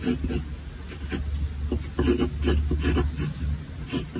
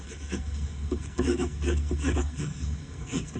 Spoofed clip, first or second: second